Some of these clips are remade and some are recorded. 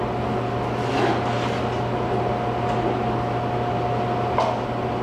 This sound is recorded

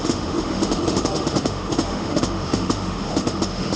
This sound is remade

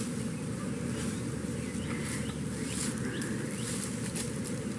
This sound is recorded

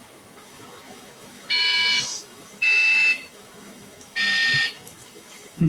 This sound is remade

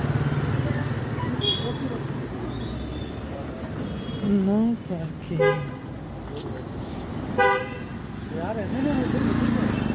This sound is recorded